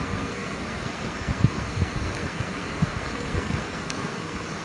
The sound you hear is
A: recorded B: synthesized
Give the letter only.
B